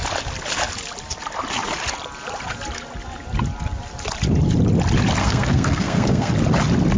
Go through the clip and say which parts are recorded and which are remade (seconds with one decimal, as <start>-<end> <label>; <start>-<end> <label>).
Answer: 0.0-5.2 recorded; 5.2-6.3 remade; 6.3-7.0 recorded